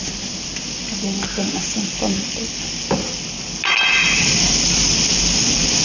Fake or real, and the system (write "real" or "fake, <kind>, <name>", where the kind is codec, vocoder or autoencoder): real